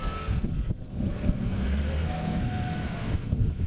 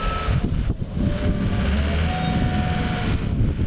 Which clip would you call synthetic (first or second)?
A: first